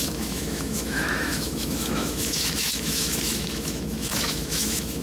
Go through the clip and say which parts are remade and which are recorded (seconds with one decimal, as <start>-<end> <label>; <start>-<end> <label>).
0.0-5.0 remade